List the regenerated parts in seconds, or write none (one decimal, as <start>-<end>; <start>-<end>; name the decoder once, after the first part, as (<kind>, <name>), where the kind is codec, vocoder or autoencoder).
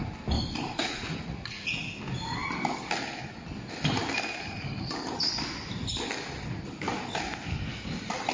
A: 0.8-1.8 (vocoder, Vocos)